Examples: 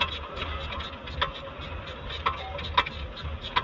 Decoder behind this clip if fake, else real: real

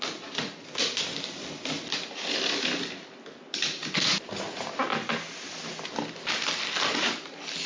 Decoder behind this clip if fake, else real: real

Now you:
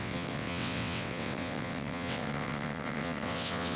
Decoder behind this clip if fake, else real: fake, vocoder, WaveNeXt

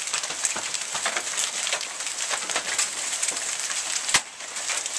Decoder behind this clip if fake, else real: real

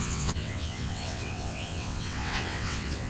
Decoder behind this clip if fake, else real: fake, vocoder, WaveNeXt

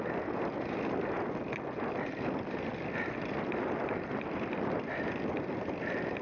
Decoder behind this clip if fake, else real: real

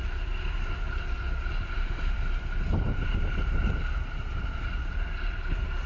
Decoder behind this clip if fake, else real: real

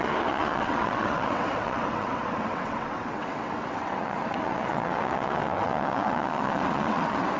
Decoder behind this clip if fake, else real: fake, vocoder, WaveNeXt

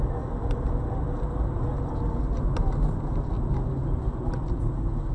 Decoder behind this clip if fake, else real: real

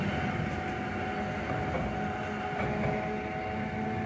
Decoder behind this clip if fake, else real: real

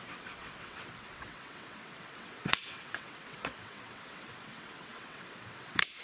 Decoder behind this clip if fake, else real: fake, vocoder, WaveNeXt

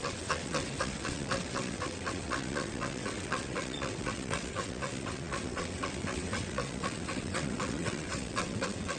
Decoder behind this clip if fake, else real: fake, vocoder, WaveNeXt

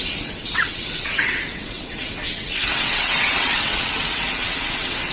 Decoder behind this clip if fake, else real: fake, vocoder, WaveNeXt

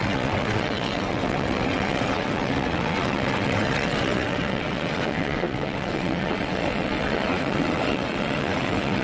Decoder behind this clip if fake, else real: fake, vocoder, WaveNeXt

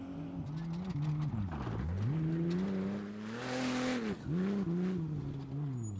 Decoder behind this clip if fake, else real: real